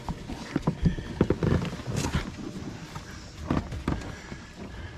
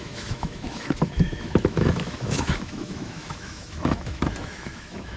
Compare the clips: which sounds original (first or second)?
first